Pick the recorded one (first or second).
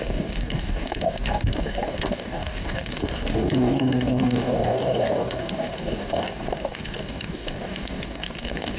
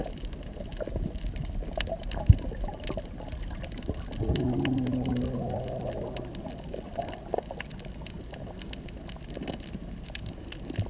second